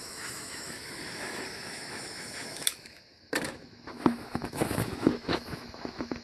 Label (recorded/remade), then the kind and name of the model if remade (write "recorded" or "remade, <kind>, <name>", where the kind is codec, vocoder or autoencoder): remade, autoencoder, DAC-VAE